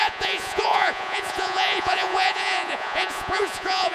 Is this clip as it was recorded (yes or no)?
no